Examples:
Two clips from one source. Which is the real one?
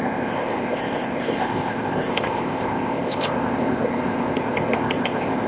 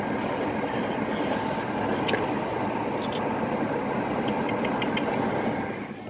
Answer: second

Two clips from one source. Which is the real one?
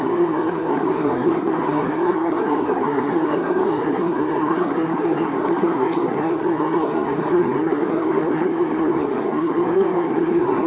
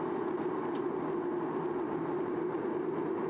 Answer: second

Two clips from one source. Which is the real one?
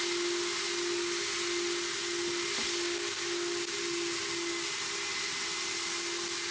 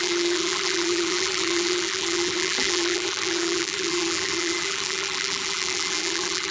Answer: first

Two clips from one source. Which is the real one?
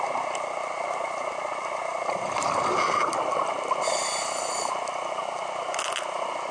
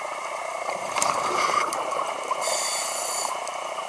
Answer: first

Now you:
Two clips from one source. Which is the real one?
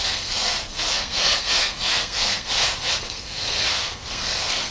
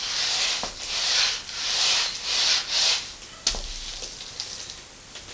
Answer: second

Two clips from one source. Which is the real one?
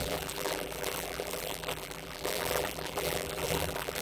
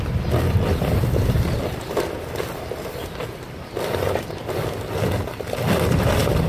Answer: second